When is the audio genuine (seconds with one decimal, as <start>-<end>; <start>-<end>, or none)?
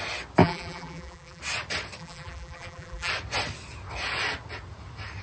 0.0-0.4; 1.4-2.0; 3.1-5.2